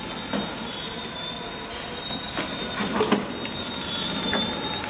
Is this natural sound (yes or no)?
yes